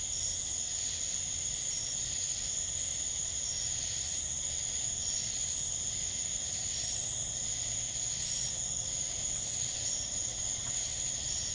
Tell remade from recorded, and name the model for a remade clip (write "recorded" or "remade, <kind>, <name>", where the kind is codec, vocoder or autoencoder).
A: recorded